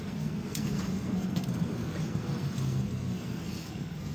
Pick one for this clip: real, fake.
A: fake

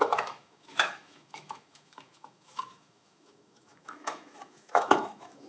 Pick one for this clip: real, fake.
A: fake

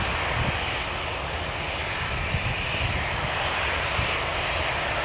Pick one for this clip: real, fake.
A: real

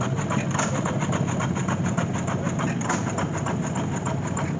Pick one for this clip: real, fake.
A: real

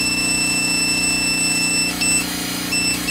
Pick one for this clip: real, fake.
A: fake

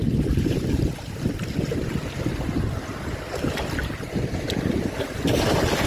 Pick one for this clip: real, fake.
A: fake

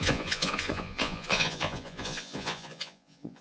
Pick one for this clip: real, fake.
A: fake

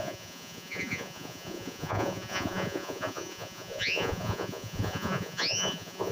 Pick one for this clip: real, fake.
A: fake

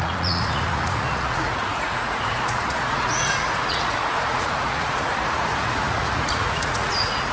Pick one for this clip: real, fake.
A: fake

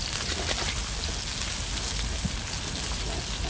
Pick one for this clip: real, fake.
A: real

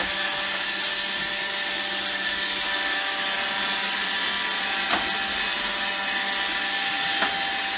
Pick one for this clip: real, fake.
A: real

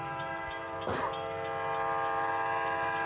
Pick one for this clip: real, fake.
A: real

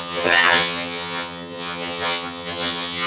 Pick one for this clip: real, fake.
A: fake